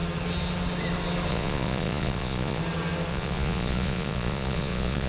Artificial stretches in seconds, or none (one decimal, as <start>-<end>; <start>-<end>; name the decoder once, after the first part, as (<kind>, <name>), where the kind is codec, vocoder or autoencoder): 1.3-2.6 (vocoder, Vocos); 3.1-5.1